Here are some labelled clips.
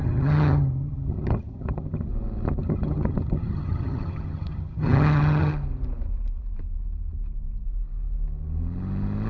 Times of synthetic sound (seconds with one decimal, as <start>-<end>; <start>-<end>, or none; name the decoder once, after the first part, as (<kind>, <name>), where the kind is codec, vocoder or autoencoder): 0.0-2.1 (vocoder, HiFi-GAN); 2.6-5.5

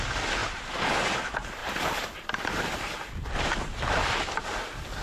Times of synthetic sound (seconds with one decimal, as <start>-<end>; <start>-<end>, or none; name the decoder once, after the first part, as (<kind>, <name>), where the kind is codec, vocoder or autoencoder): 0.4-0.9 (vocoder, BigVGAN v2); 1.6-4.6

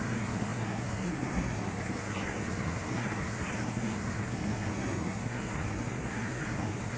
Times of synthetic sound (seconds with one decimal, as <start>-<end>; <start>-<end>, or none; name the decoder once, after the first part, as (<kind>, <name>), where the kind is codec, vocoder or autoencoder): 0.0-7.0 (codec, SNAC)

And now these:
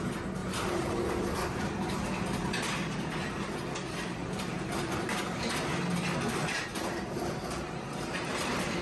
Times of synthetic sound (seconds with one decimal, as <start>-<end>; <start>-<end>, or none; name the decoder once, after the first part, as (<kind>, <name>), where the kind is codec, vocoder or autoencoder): 0.4-1.1 (vocoder, BigVGAN v2); 4.2-5.2; 6.7-8.8

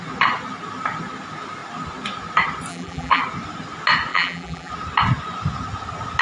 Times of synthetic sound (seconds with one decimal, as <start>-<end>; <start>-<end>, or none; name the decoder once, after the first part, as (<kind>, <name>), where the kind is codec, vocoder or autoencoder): 2.7-3.2 (vocoder, BigVGAN v2); 4.1-4.7

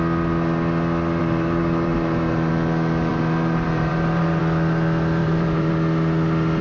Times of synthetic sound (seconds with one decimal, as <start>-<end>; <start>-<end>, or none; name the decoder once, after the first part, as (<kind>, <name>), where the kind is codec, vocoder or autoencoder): 1.2-2.5 (vocoder, BigVGAN v2); 3.1-4.4; 5.2-5.7